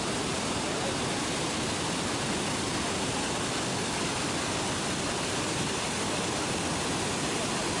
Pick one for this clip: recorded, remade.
recorded